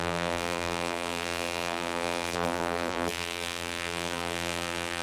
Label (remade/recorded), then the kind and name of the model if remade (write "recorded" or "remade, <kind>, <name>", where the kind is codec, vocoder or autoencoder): remade, vocoder, BigVGAN v2